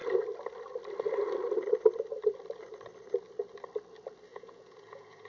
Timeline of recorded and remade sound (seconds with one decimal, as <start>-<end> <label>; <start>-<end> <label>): 0.0-4.3 recorded; 4.3-5.3 remade